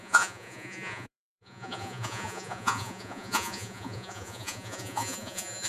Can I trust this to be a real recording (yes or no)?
no